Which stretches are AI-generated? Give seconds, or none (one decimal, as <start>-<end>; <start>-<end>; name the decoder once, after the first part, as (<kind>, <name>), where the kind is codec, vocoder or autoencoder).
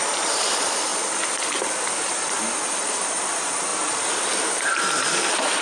none